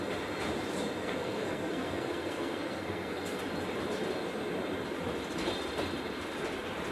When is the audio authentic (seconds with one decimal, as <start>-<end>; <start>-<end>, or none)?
0.0-1.0; 3.4-6.9